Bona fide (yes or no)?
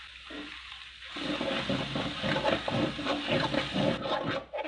yes